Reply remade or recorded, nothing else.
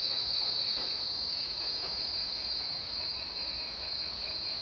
remade